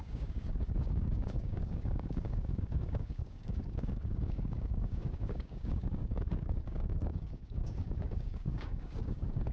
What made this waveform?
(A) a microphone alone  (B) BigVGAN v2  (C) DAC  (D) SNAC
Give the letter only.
C